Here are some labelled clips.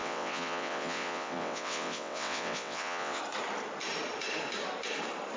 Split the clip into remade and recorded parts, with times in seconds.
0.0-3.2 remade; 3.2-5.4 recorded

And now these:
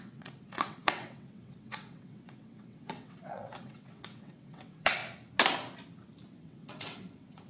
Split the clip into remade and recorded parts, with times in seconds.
0.0-5.0 remade; 5.0-6.4 recorded; 6.4-7.5 remade

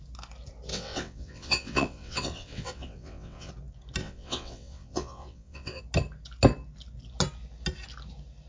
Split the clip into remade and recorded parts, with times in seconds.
0.0-0.7 recorded; 0.7-3.5 remade; 3.5-4.0 recorded; 4.0-5.8 remade; 5.8-8.5 recorded